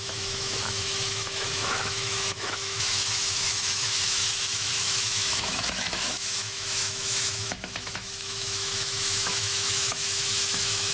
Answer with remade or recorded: remade